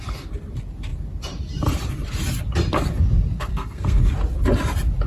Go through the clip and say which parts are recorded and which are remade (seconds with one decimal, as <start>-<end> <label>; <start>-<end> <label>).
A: 0.0-3.5 recorded; 3.5-4.1 remade; 4.1-5.1 recorded